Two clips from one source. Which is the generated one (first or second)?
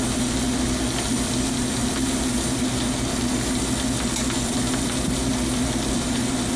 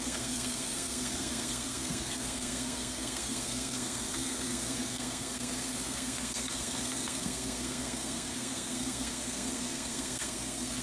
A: second